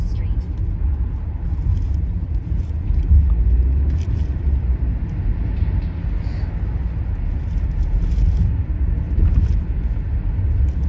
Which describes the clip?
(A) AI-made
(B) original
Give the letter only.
B